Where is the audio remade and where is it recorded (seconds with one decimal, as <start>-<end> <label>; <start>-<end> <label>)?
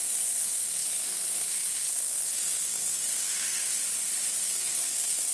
0.0-3.8 remade; 3.8-4.4 recorded; 4.4-5.3 remade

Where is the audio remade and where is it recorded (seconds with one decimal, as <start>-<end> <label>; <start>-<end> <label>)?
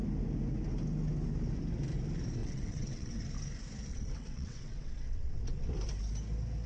0.0-2.4 recorded; 2.4-3.2 remade; 3.2-3.9 recorded; 3.9-5.7 remade; 5.7-6.7 recorded